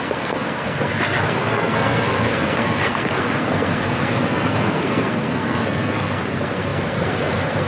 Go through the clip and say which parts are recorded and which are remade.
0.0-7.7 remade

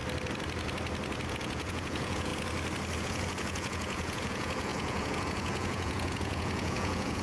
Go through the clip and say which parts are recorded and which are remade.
0.0-1.3 recorded; 1.3-2.3 remade; 2.3-3.0 recorded; 3.0-7.2 remade

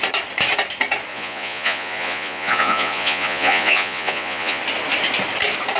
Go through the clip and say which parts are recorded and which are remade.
0.0-1.1 recorded; 1.1-4.6 remade; 4.6-5.8 recorded

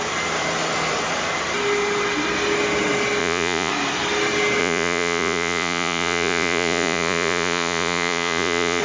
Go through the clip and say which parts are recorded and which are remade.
0.0-3.2 recorded; 3.2-3.7 remade; 3.7-4.6 recorded; 4.6-8.8 remade